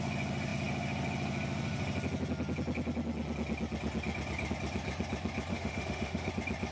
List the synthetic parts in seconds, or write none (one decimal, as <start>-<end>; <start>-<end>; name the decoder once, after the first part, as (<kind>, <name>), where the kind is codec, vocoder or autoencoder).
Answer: 5.5-6.3 (autoencoder, DAC-VAE)

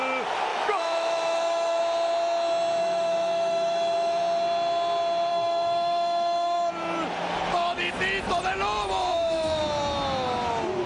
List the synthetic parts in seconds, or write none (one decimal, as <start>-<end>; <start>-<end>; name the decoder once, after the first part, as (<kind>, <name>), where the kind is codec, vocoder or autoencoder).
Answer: 0.5-1.8 (autoencoder, DAC-VAE); 2.8-4.2; 5.3-6.7; 9.1-9.6

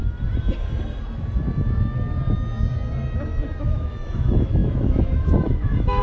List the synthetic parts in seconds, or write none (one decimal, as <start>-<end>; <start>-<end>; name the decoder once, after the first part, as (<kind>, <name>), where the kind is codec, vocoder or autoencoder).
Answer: 3.6-6.0 (autoencoder, DAC-VAE)